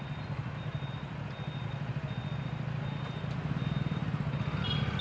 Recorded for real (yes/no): yes